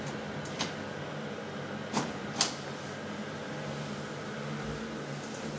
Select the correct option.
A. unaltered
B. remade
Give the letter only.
A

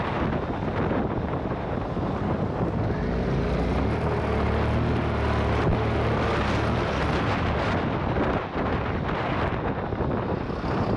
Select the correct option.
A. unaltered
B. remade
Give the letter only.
A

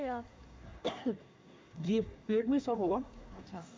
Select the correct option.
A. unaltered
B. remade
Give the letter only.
B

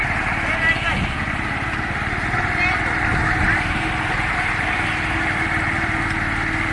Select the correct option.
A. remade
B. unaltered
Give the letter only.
B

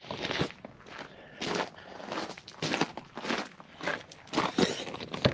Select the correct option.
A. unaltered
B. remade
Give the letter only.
A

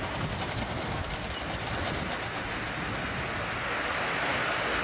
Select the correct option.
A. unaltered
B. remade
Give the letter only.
A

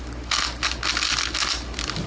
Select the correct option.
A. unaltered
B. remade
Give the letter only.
A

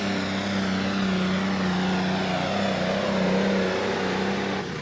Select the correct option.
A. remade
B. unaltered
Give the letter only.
B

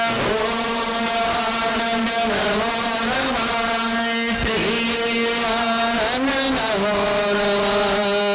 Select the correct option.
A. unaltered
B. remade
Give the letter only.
A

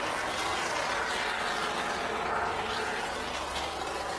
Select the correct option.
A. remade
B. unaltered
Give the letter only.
B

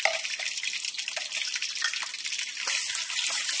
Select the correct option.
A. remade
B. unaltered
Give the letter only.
B